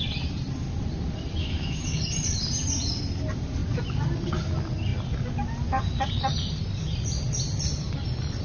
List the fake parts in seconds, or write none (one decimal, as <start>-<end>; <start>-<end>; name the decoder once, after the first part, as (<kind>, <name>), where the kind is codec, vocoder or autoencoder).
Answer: 1.4-2.0 (autoencoder, DAC-VAE)